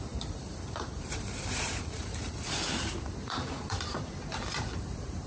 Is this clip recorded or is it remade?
remade